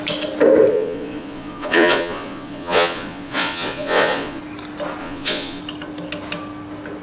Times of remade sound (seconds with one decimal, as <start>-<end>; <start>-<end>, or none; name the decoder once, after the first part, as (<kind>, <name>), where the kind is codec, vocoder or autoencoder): 0.7-4.4 (vocoder, Vocos); 5.0-5.6